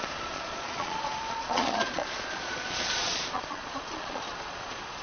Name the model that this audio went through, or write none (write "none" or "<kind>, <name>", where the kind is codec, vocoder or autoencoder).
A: vocoder, Vocos